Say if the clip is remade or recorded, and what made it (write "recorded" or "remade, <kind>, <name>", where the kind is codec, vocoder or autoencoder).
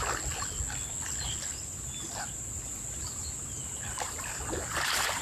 recorded